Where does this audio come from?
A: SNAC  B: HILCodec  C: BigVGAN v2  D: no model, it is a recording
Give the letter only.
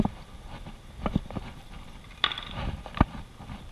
C